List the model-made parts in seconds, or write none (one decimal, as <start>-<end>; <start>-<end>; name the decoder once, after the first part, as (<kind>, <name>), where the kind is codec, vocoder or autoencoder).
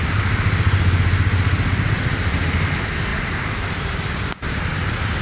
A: none